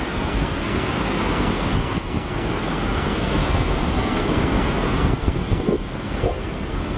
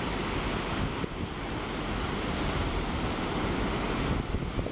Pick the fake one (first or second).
first